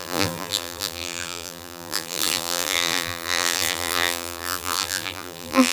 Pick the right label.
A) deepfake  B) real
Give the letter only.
A